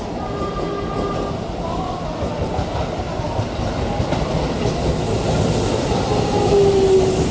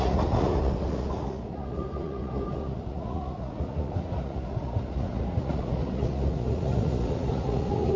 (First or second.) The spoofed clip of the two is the second